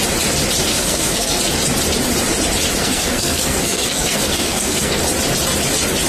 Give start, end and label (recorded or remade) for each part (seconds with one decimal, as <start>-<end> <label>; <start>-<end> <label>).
0.0-0.7 recorded; 0.7-1.4 remade; 1.4-2.8 recorded; 2.8-5.0 remade; 5.0-6.1 recorded